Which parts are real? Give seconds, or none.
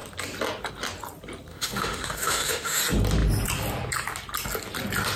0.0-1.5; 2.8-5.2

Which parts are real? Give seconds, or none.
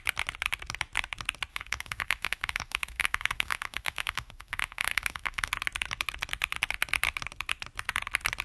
0.0-1.5; 5.5-8.4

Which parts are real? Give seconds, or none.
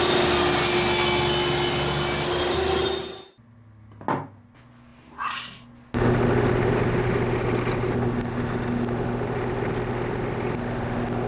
0.0-11.3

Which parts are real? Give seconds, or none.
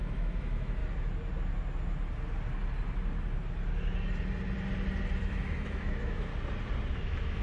0.8-5.2; 6.3-6.9